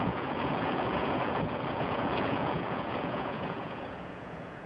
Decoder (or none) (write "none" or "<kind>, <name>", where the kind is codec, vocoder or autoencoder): vocoder, Vocos